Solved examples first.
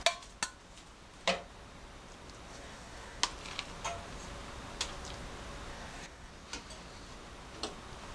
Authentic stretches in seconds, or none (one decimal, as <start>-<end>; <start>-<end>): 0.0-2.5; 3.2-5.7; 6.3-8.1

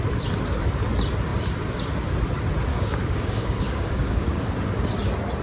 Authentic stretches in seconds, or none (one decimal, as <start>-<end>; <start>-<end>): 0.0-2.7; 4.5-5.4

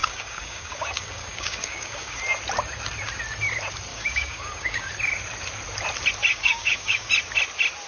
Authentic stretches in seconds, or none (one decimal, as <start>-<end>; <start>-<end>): 2.2-3.9; 4.9-6.3; 7.1-7.9

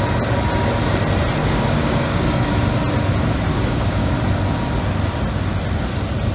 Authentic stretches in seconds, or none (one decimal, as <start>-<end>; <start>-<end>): 0.0-1.4; 2.5-3.5; 4.2-6.3

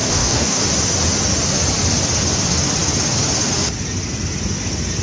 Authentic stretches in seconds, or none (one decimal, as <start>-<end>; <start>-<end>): 0.6-5.0

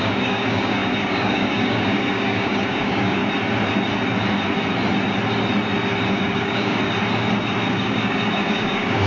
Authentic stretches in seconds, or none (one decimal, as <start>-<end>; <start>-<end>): 3.2-6.1; 6.8-7.7